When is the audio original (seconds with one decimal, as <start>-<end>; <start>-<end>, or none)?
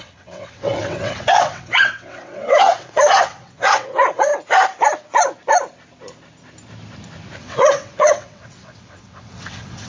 4.3-7.4